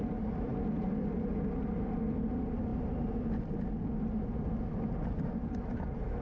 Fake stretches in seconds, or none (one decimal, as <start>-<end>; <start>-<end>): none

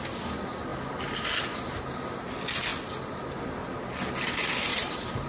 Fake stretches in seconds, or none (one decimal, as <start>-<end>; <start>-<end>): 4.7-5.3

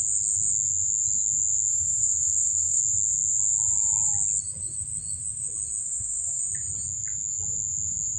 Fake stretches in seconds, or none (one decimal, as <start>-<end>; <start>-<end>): 1.7-2.8; 5.8-6.4

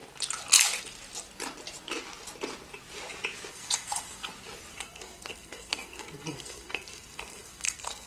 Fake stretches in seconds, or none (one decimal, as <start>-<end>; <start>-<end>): 3.5-4.3; 4.7-8.1

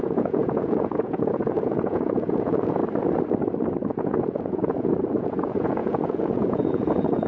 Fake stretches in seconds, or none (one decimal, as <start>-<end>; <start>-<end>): 0.0-2.8; 4.0-7.3